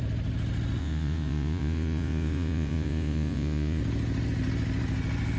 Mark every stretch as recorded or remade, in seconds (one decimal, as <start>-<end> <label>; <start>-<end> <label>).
0.0-0.8 recorded; 0.8-3.8 remade; 3.8-5.4 recorded